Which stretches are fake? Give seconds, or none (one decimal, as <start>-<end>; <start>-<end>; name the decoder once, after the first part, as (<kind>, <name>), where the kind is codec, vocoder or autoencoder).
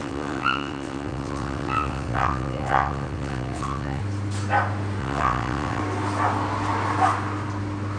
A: 0.0-4.0 (vocoder, WaveNeXt); 5.0-5.8